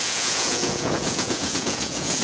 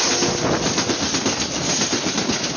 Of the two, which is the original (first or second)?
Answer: second